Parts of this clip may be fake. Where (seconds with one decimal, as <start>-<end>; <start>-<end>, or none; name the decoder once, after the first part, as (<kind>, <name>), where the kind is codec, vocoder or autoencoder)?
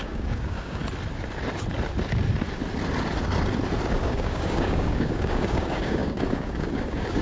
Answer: 0.0-0.8 (codec, DAC); 4.0-7.2